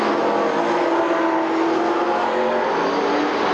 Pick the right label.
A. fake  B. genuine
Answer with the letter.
B